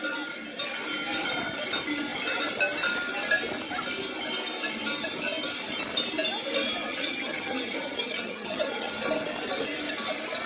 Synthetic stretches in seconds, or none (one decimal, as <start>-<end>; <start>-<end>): 6.9-8.9